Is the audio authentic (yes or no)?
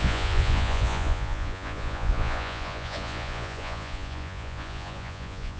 no